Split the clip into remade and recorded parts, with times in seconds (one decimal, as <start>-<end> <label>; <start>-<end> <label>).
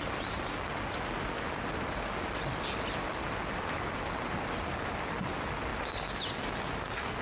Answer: 0.0-7.2 recorded